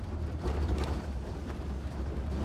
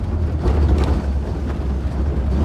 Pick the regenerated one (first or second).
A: first